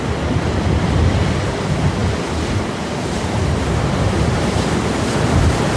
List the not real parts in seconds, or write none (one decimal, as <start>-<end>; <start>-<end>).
none